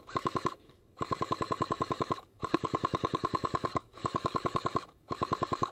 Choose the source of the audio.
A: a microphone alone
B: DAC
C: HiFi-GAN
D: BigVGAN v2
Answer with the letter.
B